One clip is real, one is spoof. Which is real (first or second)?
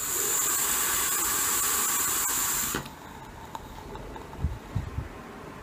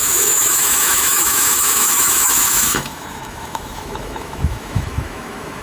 first